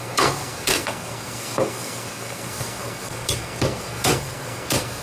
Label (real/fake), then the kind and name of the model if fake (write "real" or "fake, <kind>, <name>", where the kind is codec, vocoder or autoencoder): fake, codec, SNAC